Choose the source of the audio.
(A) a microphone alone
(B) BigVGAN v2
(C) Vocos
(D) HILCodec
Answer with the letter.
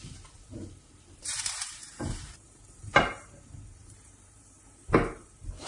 B